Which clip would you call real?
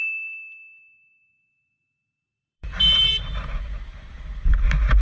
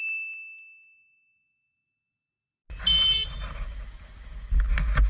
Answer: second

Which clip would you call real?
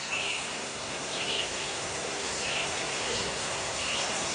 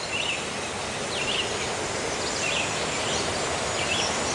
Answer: second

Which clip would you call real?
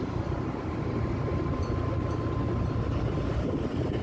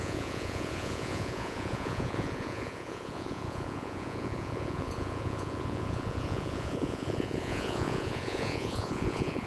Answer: first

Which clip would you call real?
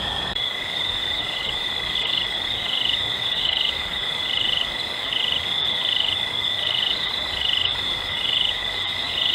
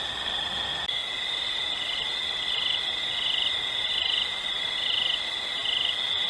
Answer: second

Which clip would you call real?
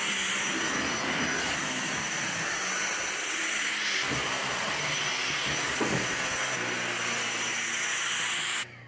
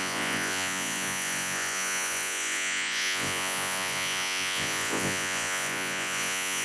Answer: first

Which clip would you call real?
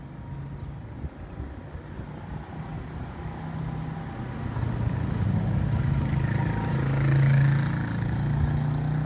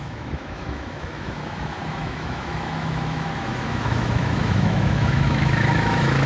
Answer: first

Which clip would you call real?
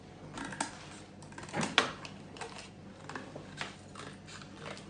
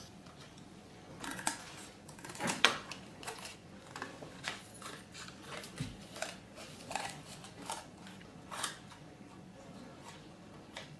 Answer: first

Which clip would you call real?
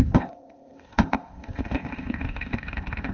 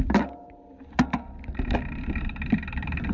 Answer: second